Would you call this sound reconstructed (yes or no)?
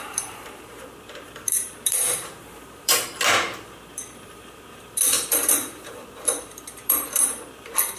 yes